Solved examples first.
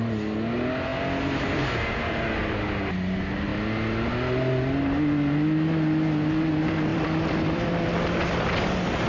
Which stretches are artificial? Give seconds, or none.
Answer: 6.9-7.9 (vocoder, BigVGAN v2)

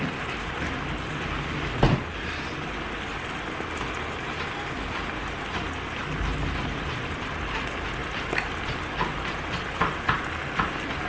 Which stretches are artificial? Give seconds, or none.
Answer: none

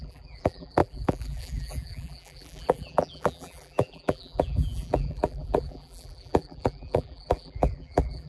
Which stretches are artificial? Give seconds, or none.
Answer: 0.0-8.3 (vocoder, BigVGAN v2)